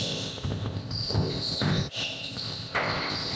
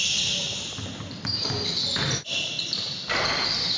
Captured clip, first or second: second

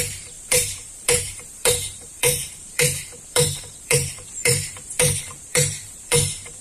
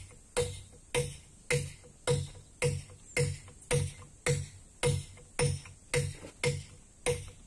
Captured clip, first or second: second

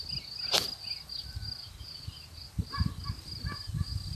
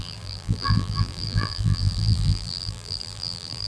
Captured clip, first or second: first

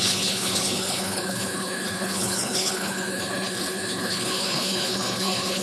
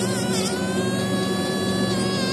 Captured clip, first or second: second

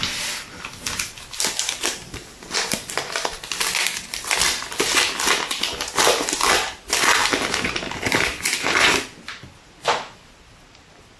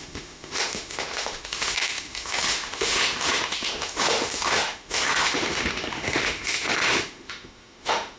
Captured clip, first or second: first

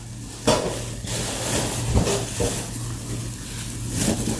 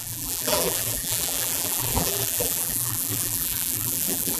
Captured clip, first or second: first